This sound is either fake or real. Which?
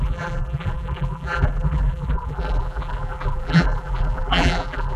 fake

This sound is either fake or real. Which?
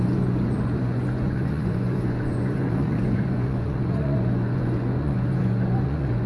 fake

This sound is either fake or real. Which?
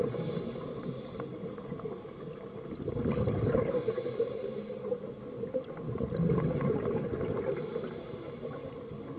real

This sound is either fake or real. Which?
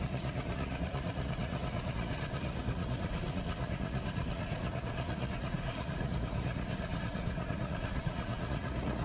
fake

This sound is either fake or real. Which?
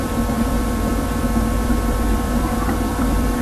fake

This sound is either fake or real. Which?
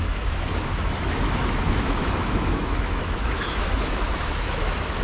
fake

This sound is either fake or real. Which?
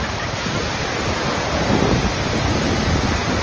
real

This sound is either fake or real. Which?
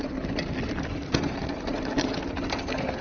real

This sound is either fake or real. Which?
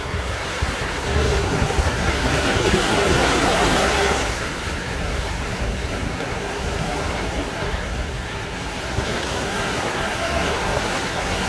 fake